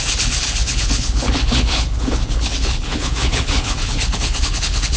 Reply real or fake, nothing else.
fake